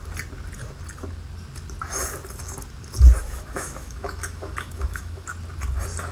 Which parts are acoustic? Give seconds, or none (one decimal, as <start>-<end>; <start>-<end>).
0.0-3.2; 5.3-6.1